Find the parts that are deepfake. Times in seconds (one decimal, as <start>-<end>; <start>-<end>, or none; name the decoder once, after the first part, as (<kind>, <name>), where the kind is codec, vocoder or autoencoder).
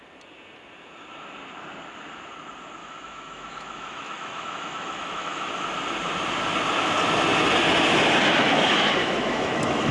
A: 2.8-5.5 (autoencoder, DAC-VAE); 9.0-9.9